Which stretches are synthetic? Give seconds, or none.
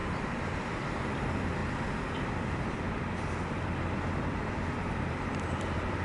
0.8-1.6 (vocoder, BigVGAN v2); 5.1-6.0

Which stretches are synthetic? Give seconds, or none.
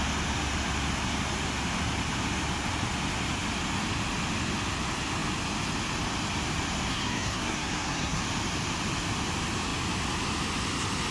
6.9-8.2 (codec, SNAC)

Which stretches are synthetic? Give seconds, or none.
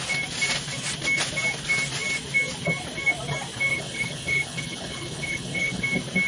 3.7-5.8 (codec, HILCodec)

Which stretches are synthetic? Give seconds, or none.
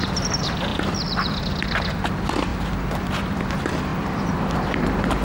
0.0-2.5 (vocoder, BigVGAN v2); 3.2-5.2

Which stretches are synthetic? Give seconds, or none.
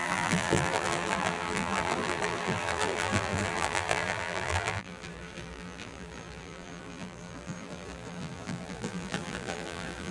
0.0-10.1 (vocoder, BigVGAN v2)